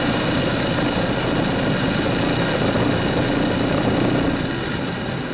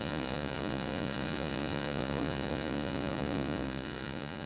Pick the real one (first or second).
first